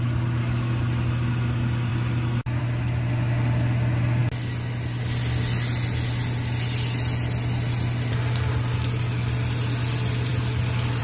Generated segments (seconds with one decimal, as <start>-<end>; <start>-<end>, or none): none